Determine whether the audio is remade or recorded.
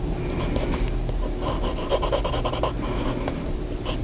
recorded